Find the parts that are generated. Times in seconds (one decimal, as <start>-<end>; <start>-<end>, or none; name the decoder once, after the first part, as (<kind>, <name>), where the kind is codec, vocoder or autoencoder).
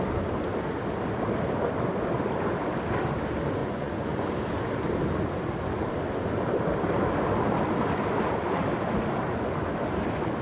3.6-4.3 (vocoder, Vocos)